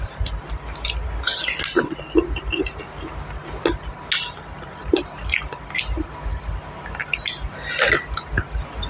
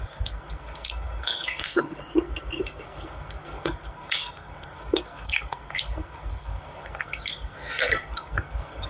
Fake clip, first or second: second